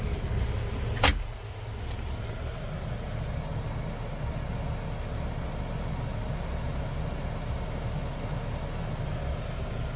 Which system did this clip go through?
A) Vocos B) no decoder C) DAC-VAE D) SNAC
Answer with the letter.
B